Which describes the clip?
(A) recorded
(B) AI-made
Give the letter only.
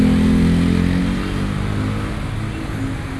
A